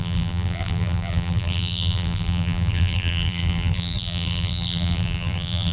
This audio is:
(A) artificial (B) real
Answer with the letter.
A